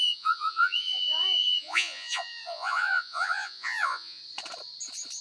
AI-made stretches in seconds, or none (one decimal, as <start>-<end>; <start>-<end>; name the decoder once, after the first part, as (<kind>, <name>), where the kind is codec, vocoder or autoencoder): 0.0-4.2 (vocoder, Vocos)